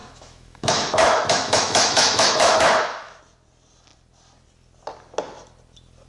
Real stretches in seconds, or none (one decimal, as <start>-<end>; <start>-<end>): 3.2-6.1